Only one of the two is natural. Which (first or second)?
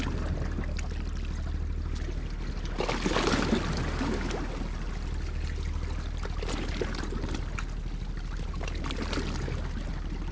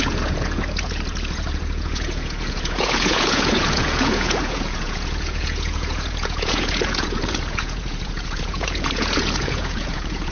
first